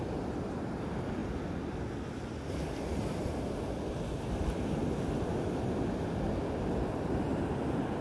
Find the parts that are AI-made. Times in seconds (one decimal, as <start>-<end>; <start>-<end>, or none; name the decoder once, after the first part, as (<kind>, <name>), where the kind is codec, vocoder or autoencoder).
none